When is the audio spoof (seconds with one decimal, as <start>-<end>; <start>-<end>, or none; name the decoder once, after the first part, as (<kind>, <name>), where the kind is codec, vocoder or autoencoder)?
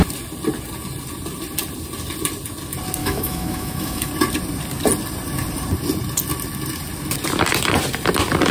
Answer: 3.0-4.1 (autoencoder, DAC-VAE)